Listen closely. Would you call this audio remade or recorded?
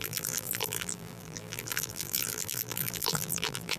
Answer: remade